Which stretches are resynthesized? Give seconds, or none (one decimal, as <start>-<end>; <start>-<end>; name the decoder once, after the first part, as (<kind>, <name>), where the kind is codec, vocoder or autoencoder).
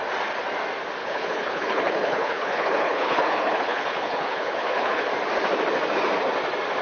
1.0-5.1 (codec, HILCodec)